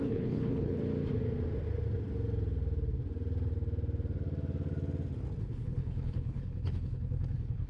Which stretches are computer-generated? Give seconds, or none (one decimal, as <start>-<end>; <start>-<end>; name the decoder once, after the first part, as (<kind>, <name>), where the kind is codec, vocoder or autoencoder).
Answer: 0.0-0.8 (codec, HILCodec); 5.4-7.7